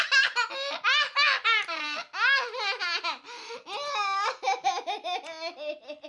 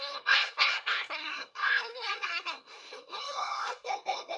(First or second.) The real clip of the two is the first